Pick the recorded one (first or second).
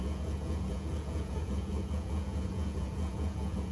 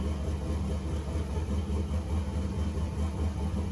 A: second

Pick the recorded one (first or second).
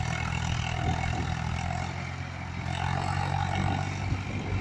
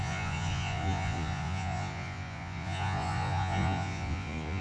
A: first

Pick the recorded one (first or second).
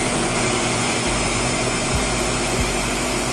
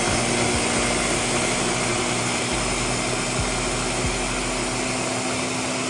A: second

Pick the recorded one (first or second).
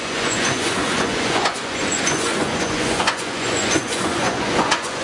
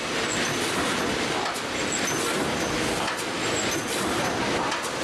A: second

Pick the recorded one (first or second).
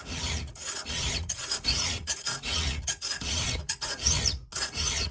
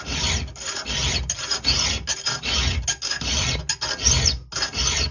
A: second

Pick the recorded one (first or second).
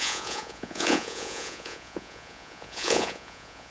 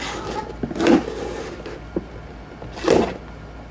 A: second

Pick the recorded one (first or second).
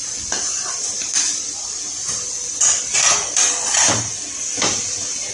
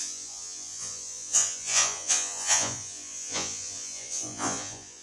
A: first